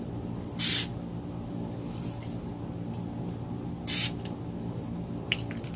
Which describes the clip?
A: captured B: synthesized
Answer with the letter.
A